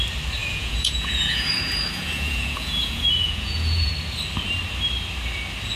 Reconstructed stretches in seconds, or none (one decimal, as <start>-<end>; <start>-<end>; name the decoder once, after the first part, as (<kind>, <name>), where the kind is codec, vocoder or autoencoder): 0.4-3.9 (vocoder, Vocos)